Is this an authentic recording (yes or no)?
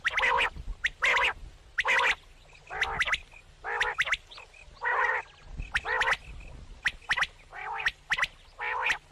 yes